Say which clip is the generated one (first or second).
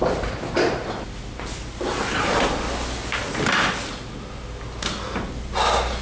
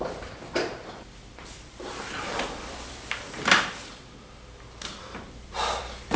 second